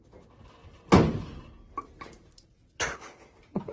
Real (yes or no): yes